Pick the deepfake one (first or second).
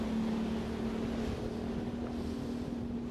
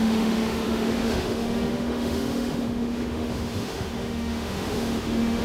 second